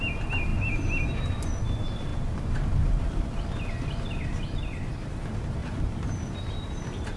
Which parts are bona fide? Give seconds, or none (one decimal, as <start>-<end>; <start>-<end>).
0.0-2.1; 3.3-4.4; 5.1-5.6